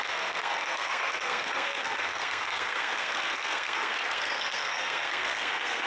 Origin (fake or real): fake